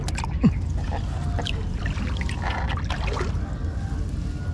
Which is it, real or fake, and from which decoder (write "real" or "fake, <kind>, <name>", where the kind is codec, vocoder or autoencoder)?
real